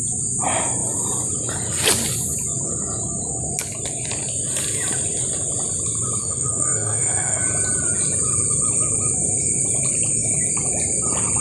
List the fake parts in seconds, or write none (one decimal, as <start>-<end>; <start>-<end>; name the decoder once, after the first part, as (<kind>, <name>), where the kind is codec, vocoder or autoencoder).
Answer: 6.2-7.4 (codec, SNAC)